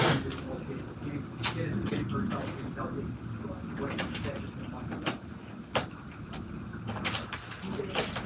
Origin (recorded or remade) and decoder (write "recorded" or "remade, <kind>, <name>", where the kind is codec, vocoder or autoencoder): recorded